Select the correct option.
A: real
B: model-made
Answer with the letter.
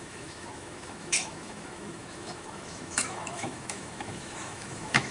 B